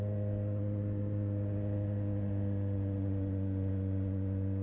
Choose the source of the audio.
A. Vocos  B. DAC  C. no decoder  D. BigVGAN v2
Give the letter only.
C